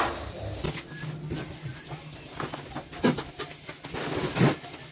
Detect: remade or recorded recorded